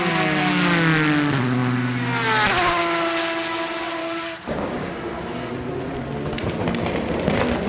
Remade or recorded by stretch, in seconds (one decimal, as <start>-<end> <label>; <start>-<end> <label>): 0.0-4.0 recorded; 4.0-4.9 remade; 4.9-7.7 recorded

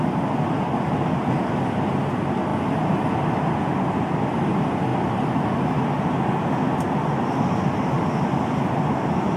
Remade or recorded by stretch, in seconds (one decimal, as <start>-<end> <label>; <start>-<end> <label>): 0.0-9.4 recorded

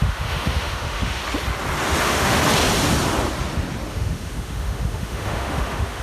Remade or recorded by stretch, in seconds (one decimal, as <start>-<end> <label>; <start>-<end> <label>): 0.0-1.2 remade; 1.2-2.0 recorded; 2.0-2.4 remade; 2.4-3.9 recorded; 3.9-6.0 remade

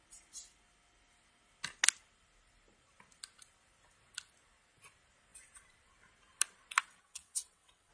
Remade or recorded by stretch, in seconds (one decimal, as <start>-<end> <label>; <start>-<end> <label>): 0.0-7.0 recorded; 7.0-7.9 remade

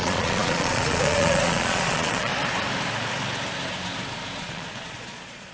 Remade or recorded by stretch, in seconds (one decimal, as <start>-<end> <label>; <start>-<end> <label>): 0.0-2.3 remade; 2.3-4.4 recorded; 4.4-5.5 remade

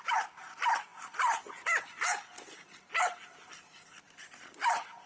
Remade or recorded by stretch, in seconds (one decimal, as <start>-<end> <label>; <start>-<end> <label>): 0.0-5.1 recorded

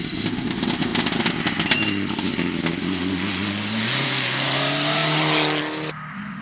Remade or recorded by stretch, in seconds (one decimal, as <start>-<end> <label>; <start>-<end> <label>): 0.0-0.9 recorded; 0.9-2.3 remade; 2.3-6.4 recorded